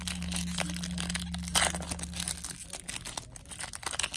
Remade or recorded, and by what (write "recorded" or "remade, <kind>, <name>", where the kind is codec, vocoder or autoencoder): recorded